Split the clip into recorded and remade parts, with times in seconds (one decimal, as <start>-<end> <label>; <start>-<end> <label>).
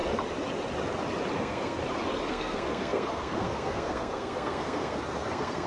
0.0-1.3 recorded; 1.3-1.8 remade; 1.8-2.3 recorded; 2.3-5.7 remade